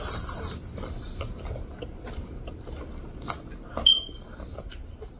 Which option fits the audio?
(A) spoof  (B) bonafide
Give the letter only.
B